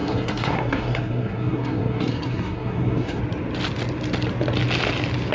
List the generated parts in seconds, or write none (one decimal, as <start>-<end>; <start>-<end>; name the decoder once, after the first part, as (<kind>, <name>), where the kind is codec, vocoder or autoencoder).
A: 0.0-3.2 (codec, SNAC)